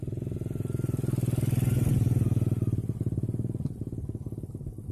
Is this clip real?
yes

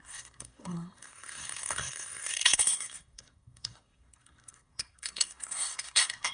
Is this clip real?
no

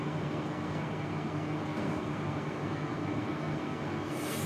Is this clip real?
no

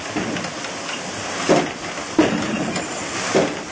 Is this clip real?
yes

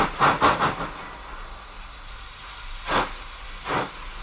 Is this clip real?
yes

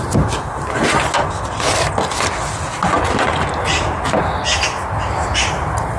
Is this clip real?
yes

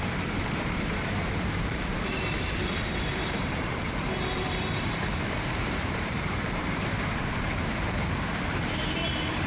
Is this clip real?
no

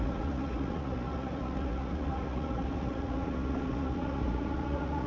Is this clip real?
no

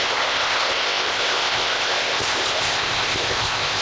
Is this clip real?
no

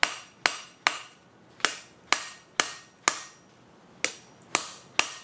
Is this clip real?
yes